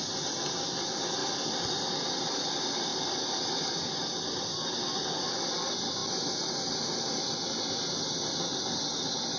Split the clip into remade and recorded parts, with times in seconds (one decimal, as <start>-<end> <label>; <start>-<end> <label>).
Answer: 0.0-1.2 recorded; 1.2-2.3 remade; 2.3-9.4 recorded